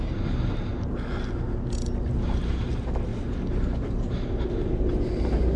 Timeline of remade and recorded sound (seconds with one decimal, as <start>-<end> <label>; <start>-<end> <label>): 0.0-0.7 remade; 0.7-2.5 recorded; 2.5-3.1 remade; 3.1-5.6 recorded